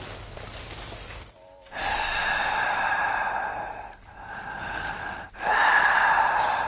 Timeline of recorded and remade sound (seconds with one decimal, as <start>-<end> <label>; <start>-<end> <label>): 0.0-6.7 recorded